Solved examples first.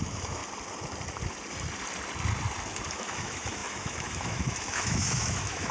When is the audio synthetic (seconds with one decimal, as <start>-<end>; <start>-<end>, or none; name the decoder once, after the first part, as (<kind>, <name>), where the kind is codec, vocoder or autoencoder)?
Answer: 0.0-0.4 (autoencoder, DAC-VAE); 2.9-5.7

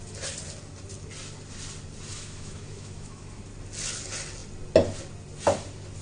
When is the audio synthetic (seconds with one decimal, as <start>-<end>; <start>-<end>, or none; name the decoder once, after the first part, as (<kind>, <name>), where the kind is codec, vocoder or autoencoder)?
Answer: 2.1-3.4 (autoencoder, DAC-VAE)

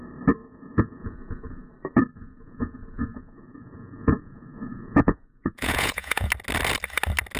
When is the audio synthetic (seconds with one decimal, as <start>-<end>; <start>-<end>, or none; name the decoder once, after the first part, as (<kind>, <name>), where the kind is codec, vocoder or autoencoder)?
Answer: 0.4-1.7 (vocoder, Vocos); 2.2-6.3